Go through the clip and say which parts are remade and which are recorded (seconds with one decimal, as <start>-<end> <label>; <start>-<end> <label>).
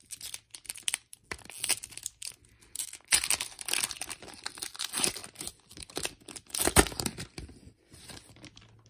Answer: 0.0-5.2 recorded; 5.2-6.3 remade; 6.3-8.9 recorded